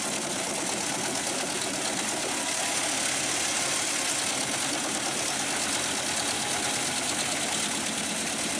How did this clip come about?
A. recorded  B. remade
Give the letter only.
A